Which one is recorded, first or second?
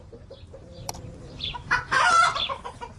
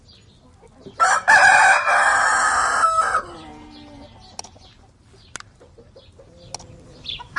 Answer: second